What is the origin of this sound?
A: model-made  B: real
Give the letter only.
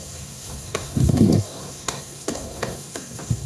A